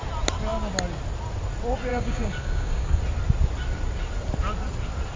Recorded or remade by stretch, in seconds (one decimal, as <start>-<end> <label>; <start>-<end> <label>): 0.0-1.9 recorded; 1.9-3.0 remade; 3.0-5.2 recorded